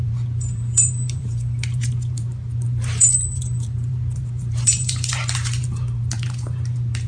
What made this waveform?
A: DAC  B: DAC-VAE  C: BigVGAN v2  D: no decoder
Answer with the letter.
C